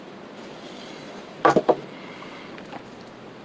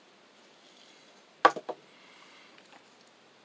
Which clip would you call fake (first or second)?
first